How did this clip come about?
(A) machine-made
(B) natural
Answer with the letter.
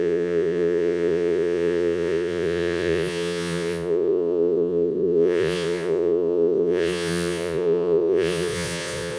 A